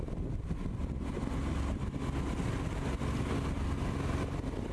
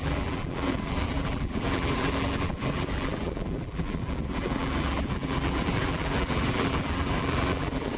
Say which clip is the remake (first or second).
second